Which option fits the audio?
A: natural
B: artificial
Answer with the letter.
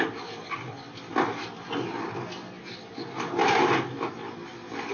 A